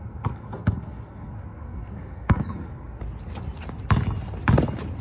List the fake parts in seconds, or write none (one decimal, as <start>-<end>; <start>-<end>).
0.0-3.0